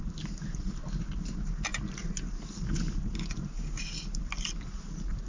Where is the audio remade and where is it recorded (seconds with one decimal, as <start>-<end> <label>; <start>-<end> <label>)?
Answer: 0.0-5.3 recorded